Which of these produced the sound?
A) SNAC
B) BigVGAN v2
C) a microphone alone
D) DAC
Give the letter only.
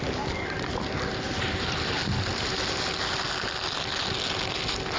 C